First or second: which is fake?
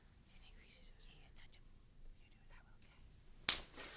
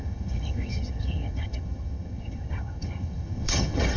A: second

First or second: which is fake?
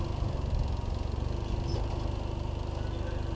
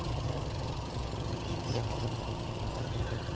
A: second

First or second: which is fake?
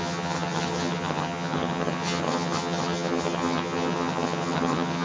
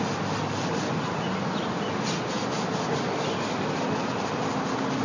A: first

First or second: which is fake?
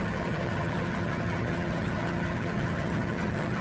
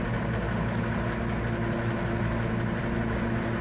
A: first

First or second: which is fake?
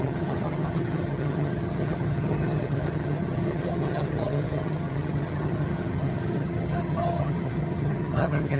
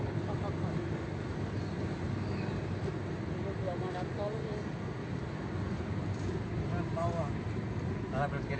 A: first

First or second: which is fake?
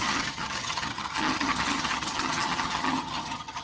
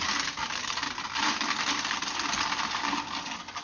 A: first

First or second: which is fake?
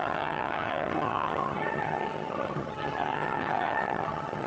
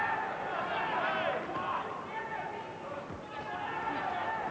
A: first